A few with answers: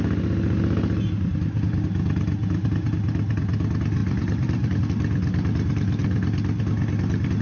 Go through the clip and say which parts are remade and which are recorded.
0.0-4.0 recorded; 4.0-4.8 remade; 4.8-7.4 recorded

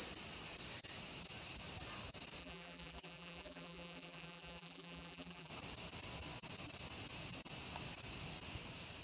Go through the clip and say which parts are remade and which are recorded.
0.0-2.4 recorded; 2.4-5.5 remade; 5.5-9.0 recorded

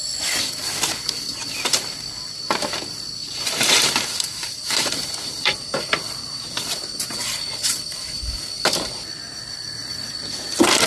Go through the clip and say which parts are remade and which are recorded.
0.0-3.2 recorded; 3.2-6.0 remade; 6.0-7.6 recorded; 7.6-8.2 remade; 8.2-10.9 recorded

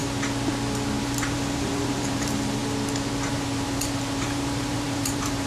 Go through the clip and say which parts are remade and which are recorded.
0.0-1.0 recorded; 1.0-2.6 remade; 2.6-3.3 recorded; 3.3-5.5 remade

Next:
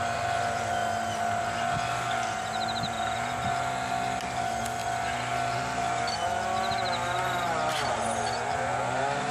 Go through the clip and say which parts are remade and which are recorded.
0.0-0.8 remade; 0.8-1.4 recorded; 1.4-9.3 remade

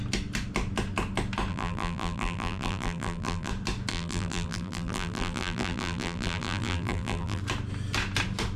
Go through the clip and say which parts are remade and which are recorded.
0.0-1.5 recorded; 1.5-3.5 remade; 3.5-3.9 recorded; 3.9-7.4 remade; 7.4-8.6 recorded